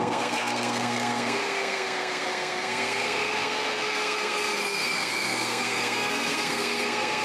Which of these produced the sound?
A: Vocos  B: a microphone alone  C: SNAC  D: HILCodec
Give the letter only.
C